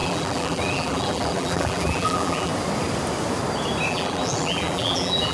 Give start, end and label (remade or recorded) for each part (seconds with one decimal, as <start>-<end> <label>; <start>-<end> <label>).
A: 0.0-2.5 remade; 2.5-3.9 recorded; 3.9-5.3 remade